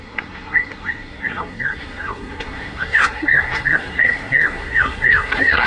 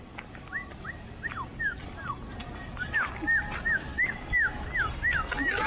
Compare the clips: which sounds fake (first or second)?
first